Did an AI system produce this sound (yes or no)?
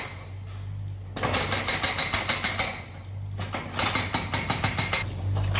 no